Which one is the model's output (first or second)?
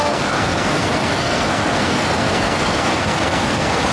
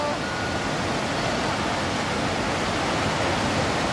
first